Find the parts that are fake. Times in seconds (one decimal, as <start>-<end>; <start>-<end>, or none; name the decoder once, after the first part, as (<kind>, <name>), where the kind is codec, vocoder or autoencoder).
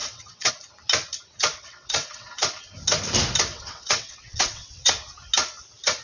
0.0-0.5 (vocoder, WaveNeXt); 1.6-2.3; 3.5-4.9